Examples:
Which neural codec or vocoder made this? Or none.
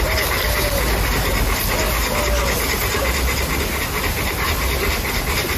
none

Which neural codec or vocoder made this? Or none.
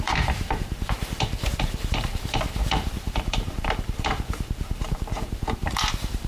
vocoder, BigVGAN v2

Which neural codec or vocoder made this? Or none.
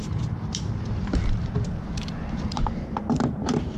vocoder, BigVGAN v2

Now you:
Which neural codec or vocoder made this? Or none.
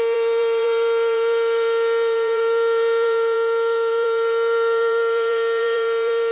vocoder, BigVGAN v2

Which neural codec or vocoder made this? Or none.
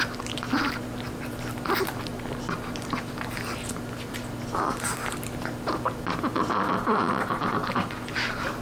none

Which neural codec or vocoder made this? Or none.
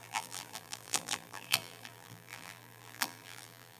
vocoder, BigVGAN v2